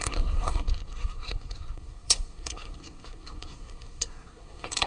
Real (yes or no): no